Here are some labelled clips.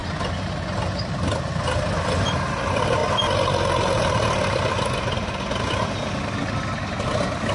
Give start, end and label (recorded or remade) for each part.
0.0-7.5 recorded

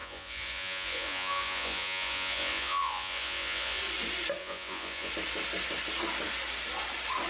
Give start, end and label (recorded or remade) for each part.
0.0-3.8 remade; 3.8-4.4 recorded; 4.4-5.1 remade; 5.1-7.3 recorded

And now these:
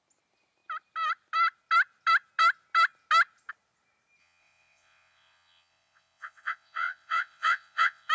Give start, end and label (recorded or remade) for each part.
0.0-4.2 recorded; 4.2-8.1 remade